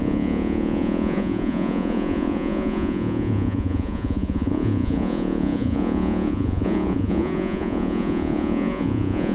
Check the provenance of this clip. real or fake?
fake